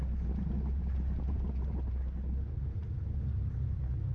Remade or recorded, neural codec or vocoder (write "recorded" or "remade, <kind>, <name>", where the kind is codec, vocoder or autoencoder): recorded